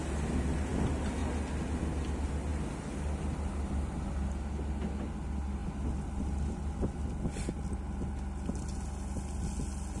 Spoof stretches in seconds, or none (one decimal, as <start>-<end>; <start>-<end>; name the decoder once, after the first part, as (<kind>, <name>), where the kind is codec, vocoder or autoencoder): none